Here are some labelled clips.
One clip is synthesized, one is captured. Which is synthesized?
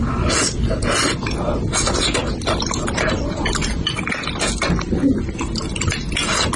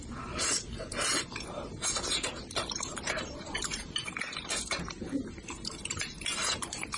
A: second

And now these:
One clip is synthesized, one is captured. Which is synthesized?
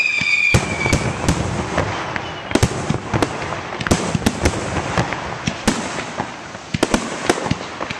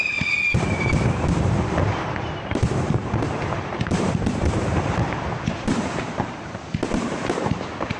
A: second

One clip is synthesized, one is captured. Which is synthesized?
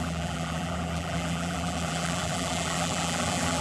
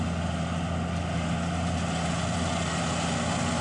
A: first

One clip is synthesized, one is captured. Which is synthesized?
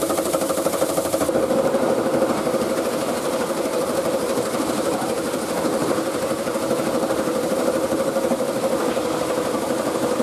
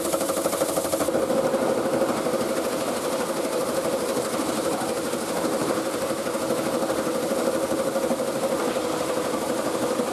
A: first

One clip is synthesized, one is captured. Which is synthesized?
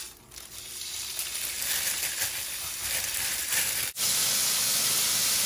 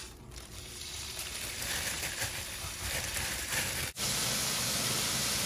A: second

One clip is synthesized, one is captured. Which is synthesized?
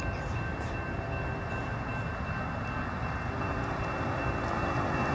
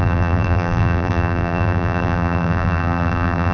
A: second